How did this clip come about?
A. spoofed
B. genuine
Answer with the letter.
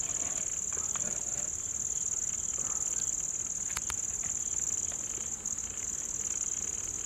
A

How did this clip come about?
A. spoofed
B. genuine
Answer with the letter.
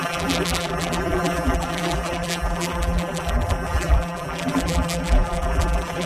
A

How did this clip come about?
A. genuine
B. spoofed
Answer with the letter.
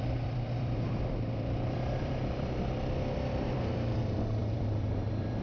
B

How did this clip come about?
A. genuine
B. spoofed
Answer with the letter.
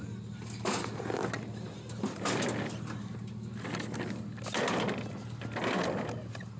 A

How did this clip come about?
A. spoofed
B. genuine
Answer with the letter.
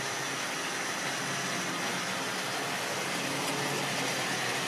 B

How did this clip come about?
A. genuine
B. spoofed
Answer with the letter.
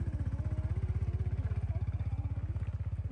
A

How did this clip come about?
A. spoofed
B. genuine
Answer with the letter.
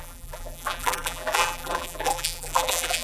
A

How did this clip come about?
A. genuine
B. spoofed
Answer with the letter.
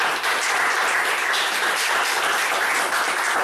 A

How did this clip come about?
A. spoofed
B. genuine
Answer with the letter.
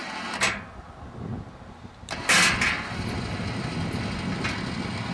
B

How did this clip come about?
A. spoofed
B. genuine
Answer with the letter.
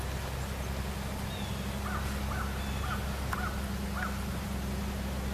B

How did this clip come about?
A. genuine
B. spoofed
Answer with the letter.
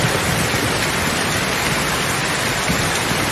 A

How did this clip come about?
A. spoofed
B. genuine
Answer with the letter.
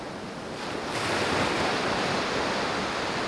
B